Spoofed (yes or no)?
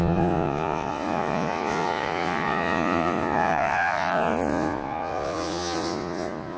yes